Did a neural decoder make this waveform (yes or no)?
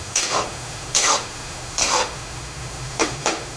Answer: yes